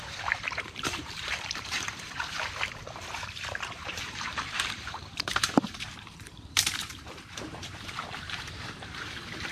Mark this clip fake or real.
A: fake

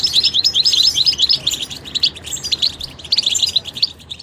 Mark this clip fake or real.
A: fake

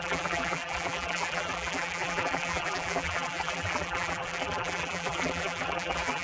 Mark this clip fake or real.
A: fake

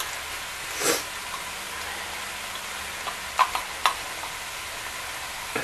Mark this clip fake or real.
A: real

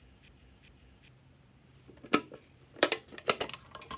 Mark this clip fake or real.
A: fake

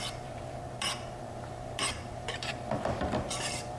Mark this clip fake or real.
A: fake